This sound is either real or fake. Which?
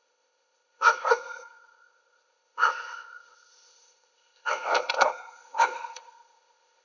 fake